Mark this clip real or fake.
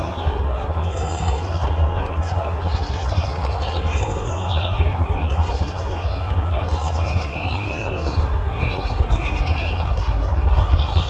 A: fake